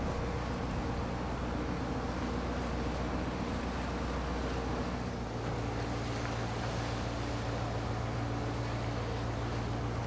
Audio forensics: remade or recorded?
recorded